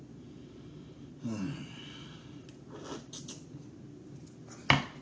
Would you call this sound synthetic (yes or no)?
no